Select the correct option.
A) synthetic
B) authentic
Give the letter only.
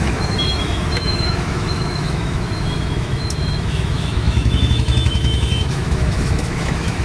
A